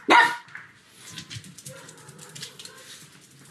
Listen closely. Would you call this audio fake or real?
real